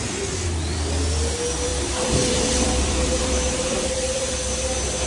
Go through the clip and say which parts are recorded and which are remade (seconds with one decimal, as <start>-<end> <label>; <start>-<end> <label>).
0.0-1.7 recorded; 1.7-4.3 remade; 4.3-5.1 recorded